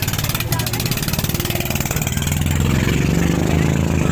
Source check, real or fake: real